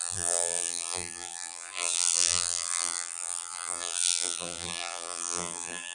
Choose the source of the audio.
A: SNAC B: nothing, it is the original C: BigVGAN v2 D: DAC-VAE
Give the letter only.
C